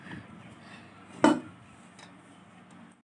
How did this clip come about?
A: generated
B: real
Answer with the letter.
B